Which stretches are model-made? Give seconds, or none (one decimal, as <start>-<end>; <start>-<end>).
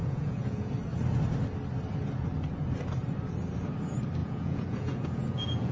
0.0-0.7; 4.2-5.7